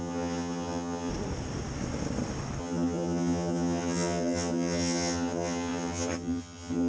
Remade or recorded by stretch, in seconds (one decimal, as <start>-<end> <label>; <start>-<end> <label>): 0.0-1.1 remade; 1.1-2.6 recorded; 2.6-6.9 remade